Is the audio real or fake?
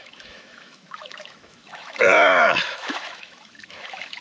fake